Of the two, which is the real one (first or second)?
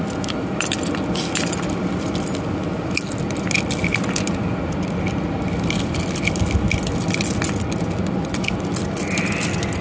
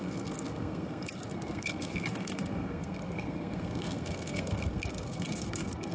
first